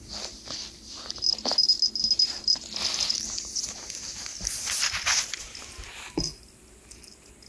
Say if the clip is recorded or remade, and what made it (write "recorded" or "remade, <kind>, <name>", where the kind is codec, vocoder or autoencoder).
recorded